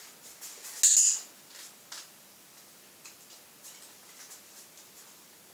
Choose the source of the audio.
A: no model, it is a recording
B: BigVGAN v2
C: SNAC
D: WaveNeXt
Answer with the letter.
A